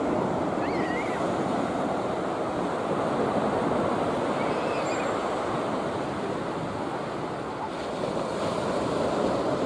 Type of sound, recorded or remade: recorded